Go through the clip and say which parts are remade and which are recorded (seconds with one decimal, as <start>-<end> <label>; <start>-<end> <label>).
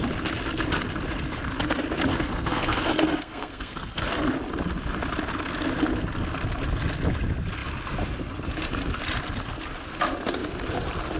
0.0-2.1 recorded; 2.1-4.2 remade; 4.2-11.2 recorded